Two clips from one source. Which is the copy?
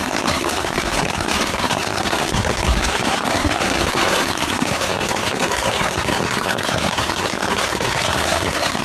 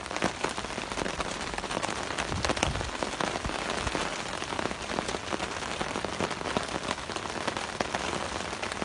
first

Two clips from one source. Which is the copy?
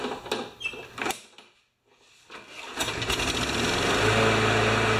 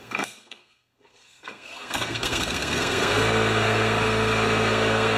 second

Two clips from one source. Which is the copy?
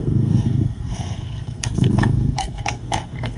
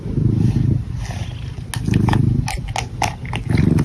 first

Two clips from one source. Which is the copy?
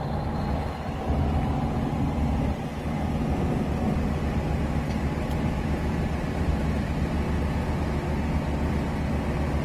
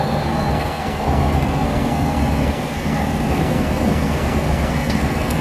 second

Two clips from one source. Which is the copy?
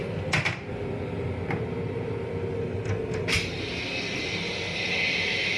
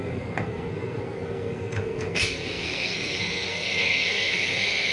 second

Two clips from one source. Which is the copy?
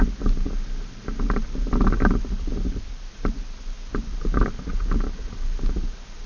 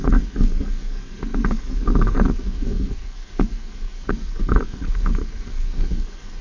second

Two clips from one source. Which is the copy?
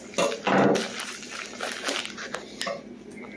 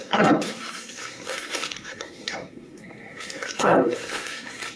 second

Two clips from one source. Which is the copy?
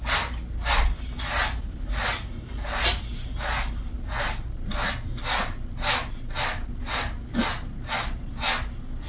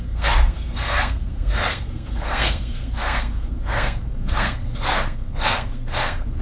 second